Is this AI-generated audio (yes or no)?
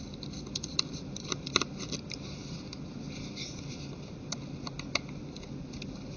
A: no